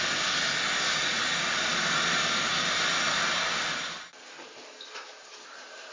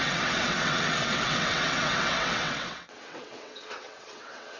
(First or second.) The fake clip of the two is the second